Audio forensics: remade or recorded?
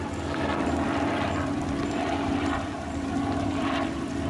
remade